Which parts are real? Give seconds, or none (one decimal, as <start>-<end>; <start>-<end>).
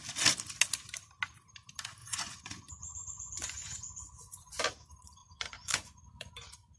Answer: 0.0-2.0; 4.6-5.2; 6.3-6.8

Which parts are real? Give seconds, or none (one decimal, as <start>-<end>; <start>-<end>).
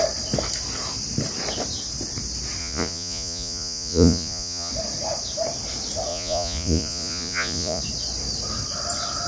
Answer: 0.0-2.6; 4.7-6.1; 7.8-9.3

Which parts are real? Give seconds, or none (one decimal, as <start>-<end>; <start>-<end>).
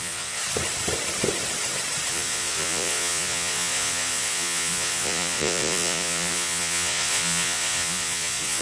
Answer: 0.4-2.1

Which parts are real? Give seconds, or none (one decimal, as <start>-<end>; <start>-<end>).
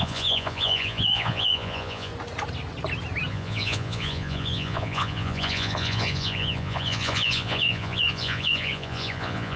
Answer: 2.1-3.3